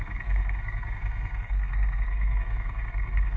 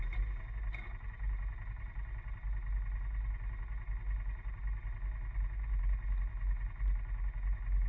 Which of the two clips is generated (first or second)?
first